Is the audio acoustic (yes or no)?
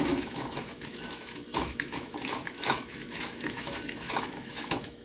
no